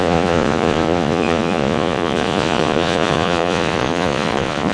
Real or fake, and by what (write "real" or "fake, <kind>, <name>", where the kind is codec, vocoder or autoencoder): fake, vocoder, Vocos